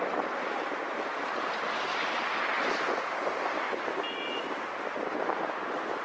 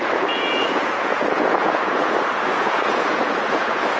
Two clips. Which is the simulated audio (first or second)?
second